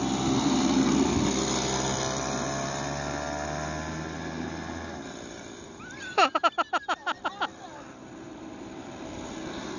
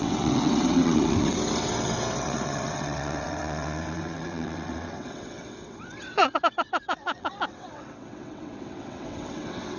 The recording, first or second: first